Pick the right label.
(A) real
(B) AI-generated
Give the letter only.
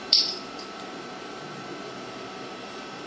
B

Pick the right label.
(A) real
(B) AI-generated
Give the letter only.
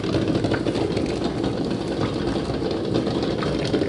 A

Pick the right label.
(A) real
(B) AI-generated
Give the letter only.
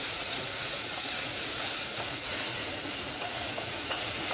B